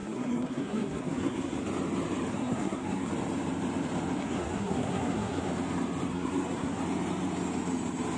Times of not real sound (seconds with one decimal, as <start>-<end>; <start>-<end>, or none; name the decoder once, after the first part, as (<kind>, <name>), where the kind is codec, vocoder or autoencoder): 0.0-1.6 (codec, SNAC); 2.3-3.1; 4.2-5.5; 6.1-6.8